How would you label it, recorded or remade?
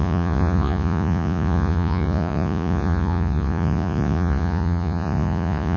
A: remade